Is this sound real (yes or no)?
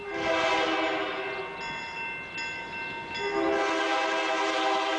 yes